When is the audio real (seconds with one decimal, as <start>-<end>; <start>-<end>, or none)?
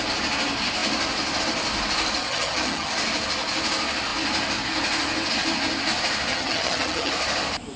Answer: 0.0-2.2; 2.9-6.3; 7.1-7.8